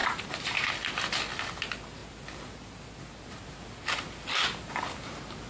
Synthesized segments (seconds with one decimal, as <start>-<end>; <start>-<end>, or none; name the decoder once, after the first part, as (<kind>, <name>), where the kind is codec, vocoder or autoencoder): 0.0-0.7 (vocoder, BigVGAN v2)